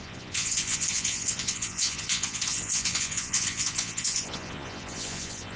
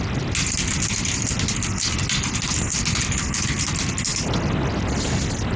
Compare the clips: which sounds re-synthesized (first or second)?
first